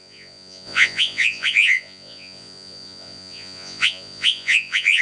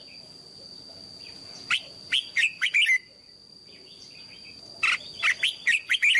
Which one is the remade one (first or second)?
first